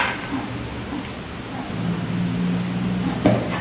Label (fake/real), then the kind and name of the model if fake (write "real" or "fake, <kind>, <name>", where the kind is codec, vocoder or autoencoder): real